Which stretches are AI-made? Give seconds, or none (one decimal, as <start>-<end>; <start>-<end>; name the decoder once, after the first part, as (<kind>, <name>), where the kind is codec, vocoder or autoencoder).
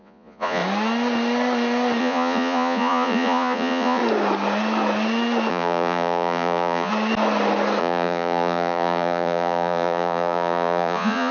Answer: 0.0-0.6 (vocoder, Vocos); 2.0-4.0; 5.5-6.9; 7.8-11.3